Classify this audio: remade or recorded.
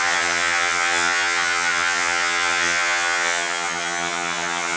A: remade